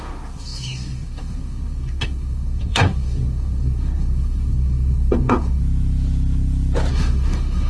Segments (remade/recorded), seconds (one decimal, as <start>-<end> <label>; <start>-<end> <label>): 0.0-5.6 remade; 5.6-6.9 recorded; 6.9-7.7 remade